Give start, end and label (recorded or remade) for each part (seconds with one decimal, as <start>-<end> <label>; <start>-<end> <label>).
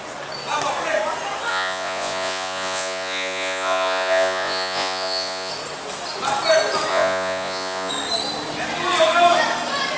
0.0-1.5 recorded; 1.5-5.5 remade; 5.5-6.9 recorded; 6.9-7.9 remade; 7.9-10.0 recorded